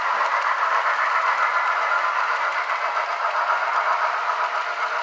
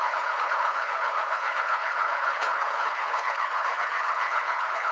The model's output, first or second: second